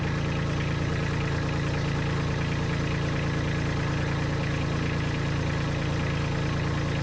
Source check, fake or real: real